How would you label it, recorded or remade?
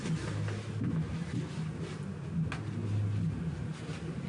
recorded